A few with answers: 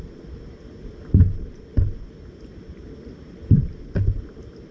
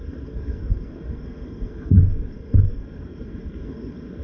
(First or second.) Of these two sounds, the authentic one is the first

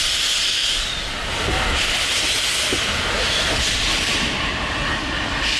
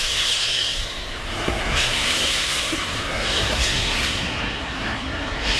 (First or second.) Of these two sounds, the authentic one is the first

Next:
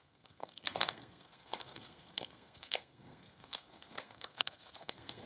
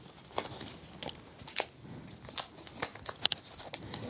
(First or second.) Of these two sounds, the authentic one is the second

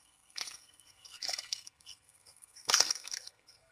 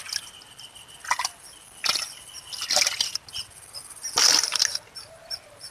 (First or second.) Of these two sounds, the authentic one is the second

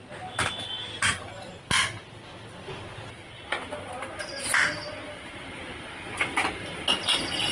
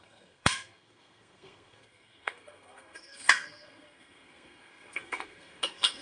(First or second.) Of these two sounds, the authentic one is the first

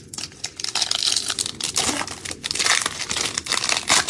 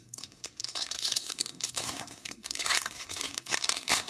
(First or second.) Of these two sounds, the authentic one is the first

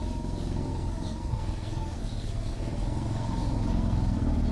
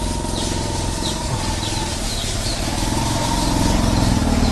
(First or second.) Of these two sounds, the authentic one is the second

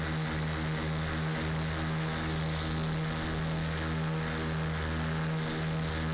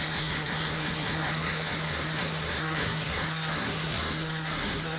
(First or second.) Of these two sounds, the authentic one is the first